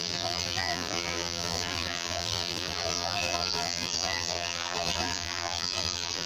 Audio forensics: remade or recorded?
remade